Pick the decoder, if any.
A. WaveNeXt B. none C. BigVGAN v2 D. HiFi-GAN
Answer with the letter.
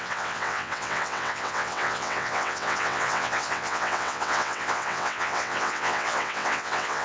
A